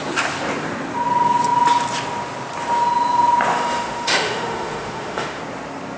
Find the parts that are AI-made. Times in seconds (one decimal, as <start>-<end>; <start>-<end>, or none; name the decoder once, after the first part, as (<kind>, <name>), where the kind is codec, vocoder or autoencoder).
3.5-5.4 (autoencoder, DAC-VAE)